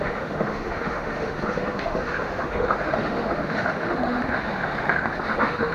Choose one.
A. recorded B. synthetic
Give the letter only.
B